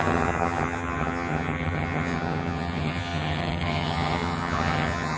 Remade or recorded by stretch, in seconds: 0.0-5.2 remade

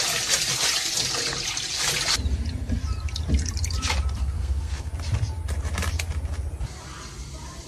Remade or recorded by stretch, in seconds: 0.0-4.2 recorded; 4.2-4.9 remade; 4.9-7.7 recorded

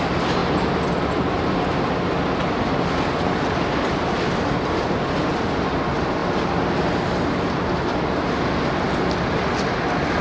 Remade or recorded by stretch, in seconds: 0.0-10.2 recorded

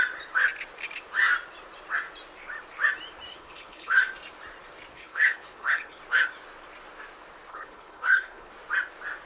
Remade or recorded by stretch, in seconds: 0.0-3.3 recorded; 3.3-4.0 remade; 4.0-4.9 recorded; 4.9-6.0 remade; 6.0-7.5 recorded; 7.5-8.5 remade; 8.5-9.3 recorded

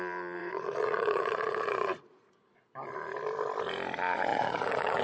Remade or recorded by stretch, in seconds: 0.0-0.4 recorded; 0.4-2.3 remade; 2.3-4.3 recorded; 4.3-5.0 remade